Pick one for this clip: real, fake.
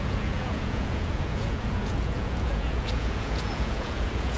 fake